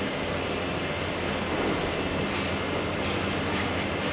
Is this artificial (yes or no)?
no